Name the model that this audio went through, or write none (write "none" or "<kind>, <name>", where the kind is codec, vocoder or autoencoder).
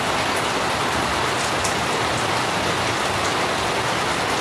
none